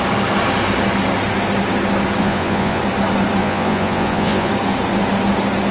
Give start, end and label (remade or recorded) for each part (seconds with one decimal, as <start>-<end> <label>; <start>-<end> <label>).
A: 0.0-2.2 recorded; 2.2-2.8 remade; 2.8-3.4 recorded; 3.4-4.5 remade; 4.5-5.7 recorded